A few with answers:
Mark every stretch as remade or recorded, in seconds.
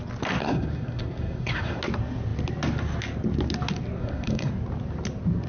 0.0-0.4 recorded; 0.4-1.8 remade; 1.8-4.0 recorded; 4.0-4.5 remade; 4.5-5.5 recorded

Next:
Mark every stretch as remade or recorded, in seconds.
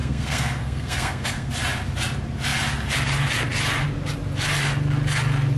0.0-1.5 remade; 1.5-5.6 recorded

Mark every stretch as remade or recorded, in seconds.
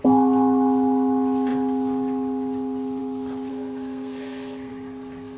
0.0-3.5 recorded; 3.5-4.7 remade; 4.7-5.4 recorded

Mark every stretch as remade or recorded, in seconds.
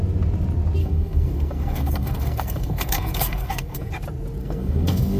0.0-0.8 recorded; 0.8-3.9 remade; 3.9-4.4 recorded; 4.4-5.2 remade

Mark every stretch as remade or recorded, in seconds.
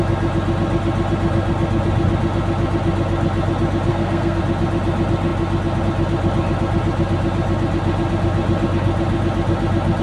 0.0-3.9 recorded; 3.9-4.4 remade; 4.4-10.0 recorded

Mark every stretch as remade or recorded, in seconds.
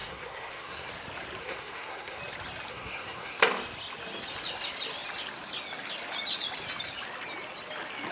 0.0-0.9 remade; 0.9-1.4 recorded; 1.4-2.2 remade; 2.2-2.7 recorded; 2.7-3.4 remade; 3.4-8.1 recorded